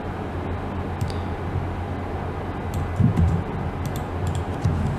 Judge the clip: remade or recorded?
recorded